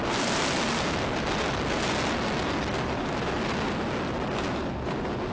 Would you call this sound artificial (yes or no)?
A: no